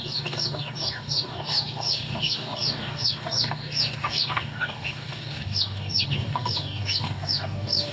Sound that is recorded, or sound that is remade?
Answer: remade